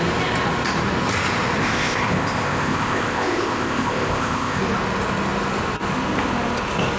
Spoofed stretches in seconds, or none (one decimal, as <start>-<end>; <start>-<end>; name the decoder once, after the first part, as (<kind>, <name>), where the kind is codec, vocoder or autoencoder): 1.6-4.6 (codec, ZipCodec)